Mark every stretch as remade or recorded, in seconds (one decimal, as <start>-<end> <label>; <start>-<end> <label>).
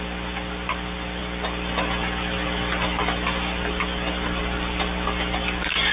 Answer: 0.0-5.9 recorded